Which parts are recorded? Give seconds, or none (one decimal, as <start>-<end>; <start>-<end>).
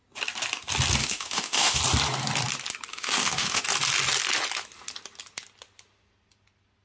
0.0-1.0; 1.8-2.9; 3.6-6.8